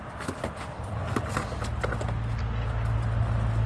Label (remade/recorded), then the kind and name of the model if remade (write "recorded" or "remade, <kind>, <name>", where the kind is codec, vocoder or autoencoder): recorded